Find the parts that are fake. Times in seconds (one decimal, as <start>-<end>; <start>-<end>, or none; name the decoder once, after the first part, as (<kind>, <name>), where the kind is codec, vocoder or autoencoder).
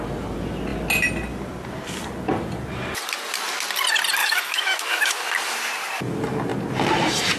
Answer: 4.2-5.2 (autoencoder, DAC-VAE)